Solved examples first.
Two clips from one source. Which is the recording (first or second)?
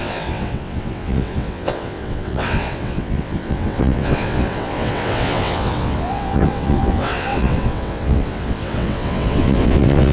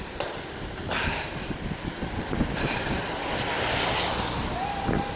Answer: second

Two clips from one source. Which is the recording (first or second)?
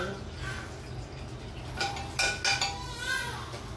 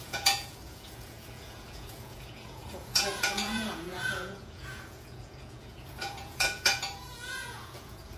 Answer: first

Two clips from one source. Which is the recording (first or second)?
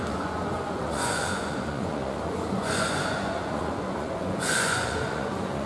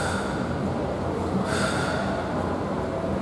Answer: second